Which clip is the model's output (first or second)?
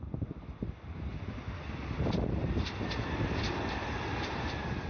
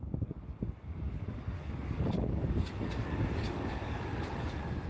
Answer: second